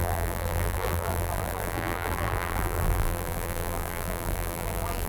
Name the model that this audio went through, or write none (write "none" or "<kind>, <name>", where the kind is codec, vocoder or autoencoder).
vocoder, BigVGAN v2